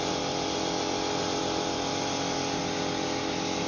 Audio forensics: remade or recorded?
recorded